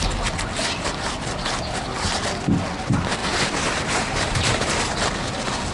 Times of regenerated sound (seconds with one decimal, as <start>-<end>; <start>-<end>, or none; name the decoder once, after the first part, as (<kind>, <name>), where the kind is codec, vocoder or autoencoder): 3.2-4.8 (vocoder, BigVGAN v2)